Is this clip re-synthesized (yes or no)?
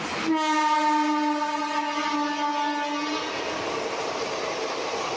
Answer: no